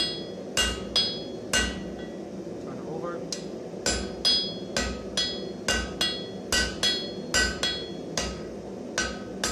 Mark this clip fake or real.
real